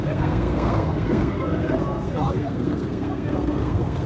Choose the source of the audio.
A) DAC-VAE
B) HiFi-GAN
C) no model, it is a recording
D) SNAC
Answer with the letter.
D